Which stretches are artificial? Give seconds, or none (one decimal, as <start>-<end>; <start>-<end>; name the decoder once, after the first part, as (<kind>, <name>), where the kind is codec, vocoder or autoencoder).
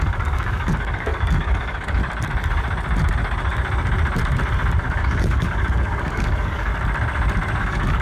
0.0-2.0 (codec, DAC); 4.8-6.7; 7.6-8.0